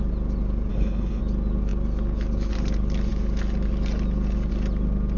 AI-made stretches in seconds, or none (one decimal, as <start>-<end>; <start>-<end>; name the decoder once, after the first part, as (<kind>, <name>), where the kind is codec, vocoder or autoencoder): 0.7-1.2 (codec, HILCodec)